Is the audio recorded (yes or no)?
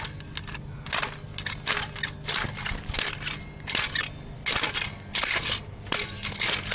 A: yes